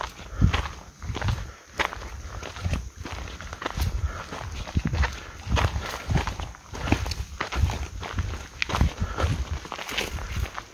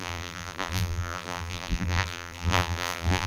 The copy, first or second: second